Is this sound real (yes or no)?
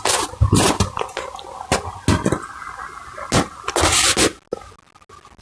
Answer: yes